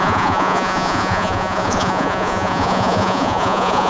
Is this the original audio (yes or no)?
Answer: no